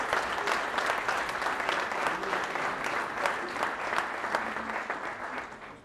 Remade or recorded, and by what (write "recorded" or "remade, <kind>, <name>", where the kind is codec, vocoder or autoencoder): recorded